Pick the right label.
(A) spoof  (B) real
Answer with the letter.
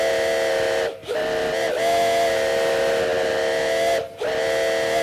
B